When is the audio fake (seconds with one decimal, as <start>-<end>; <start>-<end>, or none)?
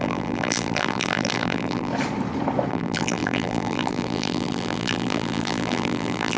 0.0-1.9; 2.7-6.4